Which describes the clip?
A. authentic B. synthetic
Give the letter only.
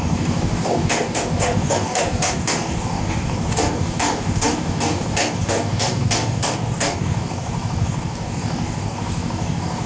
B